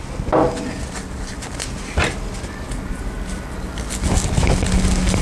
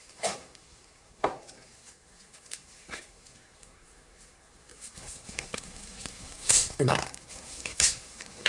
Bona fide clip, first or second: first